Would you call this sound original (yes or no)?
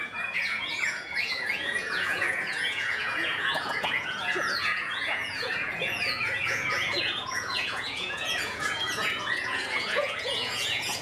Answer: no